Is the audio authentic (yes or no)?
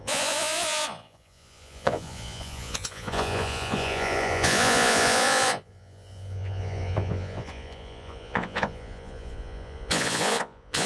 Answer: no